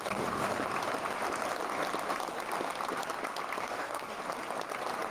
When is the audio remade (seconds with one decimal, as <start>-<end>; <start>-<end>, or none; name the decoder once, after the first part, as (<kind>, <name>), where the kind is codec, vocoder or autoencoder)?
0.0-0.5 (codec, DAC); 3.6-4.2